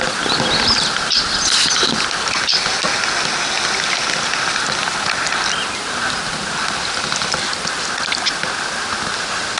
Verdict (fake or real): real